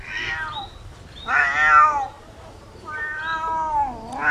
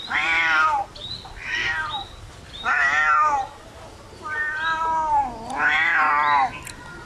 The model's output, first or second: second